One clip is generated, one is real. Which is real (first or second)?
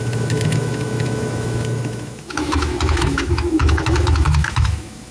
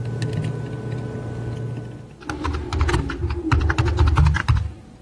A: second